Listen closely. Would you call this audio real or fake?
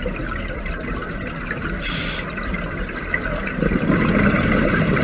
real